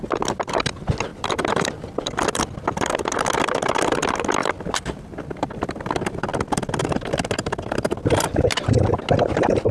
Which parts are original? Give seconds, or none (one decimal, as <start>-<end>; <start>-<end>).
0.0-1.1; 3.0-4.4; 5.8-9.7